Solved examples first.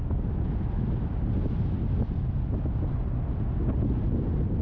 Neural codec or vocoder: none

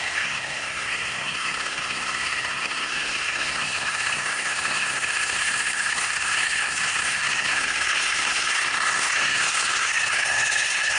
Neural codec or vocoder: codec, SNAC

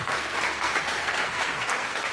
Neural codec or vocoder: codec, SNAC